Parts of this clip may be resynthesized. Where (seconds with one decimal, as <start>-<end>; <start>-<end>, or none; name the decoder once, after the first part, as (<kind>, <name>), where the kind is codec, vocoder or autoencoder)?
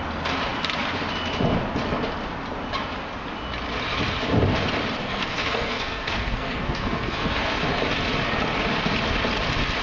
5.0-7.5 (codec, SNAC)